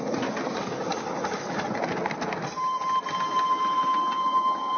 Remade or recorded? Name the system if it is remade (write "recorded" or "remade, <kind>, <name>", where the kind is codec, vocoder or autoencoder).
recorded